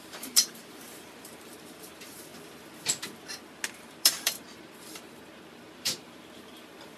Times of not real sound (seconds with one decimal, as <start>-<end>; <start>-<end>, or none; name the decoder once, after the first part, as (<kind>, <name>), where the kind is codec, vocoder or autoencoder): 0.0-2.3 (vocoder, BigVGAN v2); 3.7-7.0